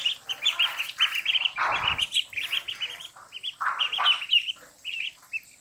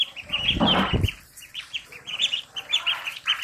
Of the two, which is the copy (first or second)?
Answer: second